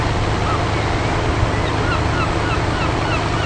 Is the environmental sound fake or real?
real